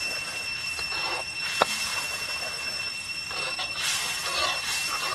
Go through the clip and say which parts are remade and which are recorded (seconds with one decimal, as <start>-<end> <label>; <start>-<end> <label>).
0.0-5.1 recorded